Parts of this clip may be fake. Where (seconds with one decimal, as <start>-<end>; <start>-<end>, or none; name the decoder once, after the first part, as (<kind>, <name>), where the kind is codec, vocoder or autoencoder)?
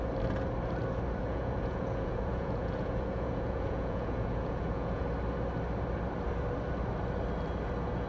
1.2-5.0 (vocoder, Vocos)